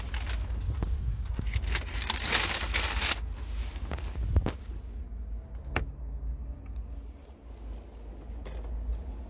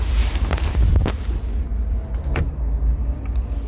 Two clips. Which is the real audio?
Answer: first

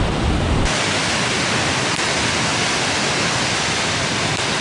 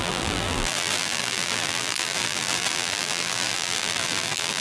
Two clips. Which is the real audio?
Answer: first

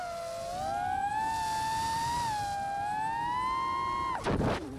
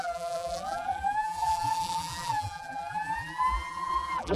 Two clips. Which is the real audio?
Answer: first